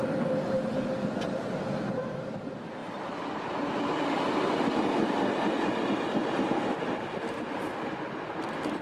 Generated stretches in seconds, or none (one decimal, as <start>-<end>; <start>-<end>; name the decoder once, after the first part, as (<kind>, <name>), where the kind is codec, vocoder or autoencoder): none